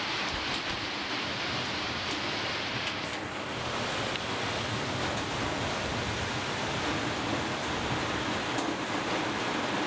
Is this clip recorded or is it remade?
recorded